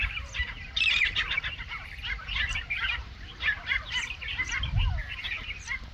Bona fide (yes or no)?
yes